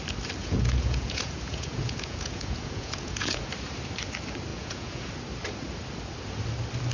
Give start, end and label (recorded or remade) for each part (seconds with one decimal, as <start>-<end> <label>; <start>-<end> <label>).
0.0-0.4 recorded; 0.4-3.5 remade; 3.5-4.5 recorded; 4.5-5.1 remade; 5.1-6.9 recorded